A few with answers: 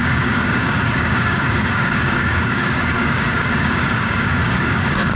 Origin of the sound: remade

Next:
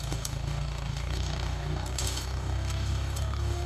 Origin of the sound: remade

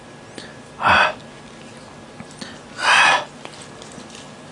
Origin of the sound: recorded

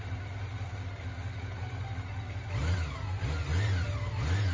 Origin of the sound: recorded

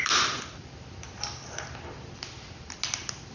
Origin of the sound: recorded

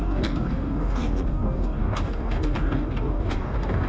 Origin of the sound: remade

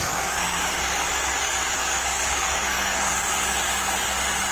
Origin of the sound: remade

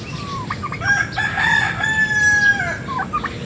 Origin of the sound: recorded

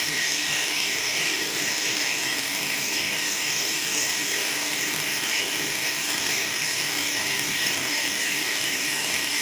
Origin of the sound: remade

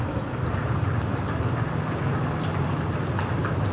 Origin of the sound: recorded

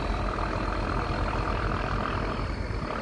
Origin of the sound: recorded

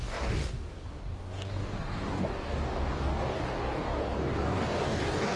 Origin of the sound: remade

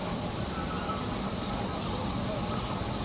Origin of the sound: recorded